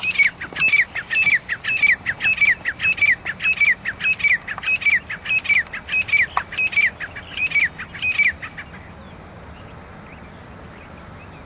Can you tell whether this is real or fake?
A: real